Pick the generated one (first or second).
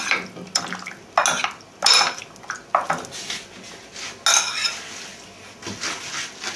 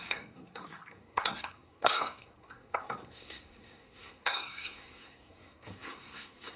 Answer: second